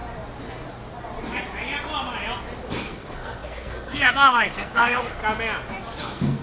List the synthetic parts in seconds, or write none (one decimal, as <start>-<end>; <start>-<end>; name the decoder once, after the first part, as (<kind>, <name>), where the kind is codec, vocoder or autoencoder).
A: 2.7-5.2 (codec, SNAC); 6.0-6.4